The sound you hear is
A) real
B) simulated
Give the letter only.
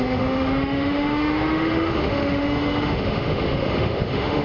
B